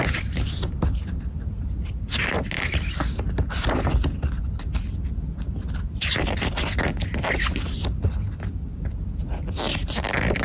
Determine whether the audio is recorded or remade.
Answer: recorded